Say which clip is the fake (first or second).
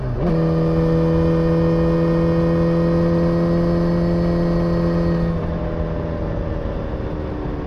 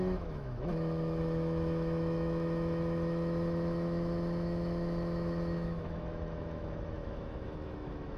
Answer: second